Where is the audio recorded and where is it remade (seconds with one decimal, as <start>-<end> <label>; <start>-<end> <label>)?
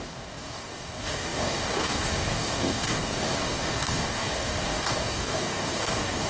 0.0-6.3 remade